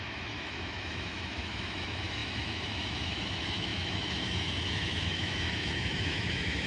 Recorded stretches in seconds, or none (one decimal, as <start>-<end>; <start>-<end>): none